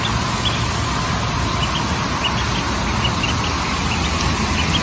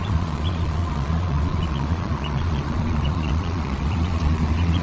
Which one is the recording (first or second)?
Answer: first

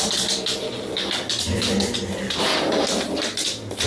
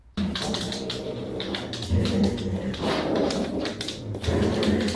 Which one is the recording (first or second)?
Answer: first